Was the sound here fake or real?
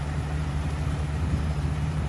fake